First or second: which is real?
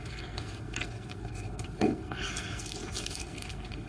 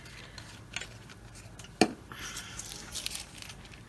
second